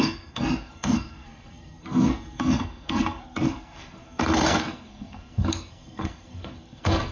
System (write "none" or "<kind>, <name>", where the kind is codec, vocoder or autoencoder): codec, SNAC